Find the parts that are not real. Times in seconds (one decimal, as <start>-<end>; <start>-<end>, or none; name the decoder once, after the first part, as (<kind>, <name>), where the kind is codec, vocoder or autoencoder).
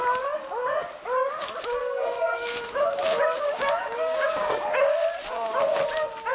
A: 1.8-5.6 (codec, DAC)